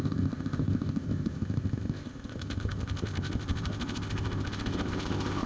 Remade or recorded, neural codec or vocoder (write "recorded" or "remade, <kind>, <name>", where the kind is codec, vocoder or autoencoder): remade, codec, ZipCodec